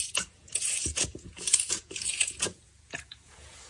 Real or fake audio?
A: fake